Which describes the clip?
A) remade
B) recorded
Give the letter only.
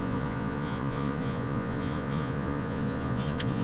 A